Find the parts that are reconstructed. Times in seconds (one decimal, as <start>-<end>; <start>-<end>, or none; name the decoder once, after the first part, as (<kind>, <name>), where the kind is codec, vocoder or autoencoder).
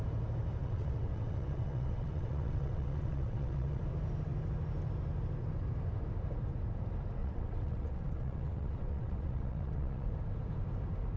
0.6-3.8 (vocoder, WaveNeXt); 7.2-10.1